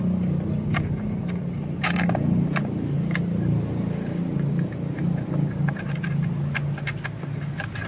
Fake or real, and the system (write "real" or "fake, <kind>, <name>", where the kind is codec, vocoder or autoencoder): real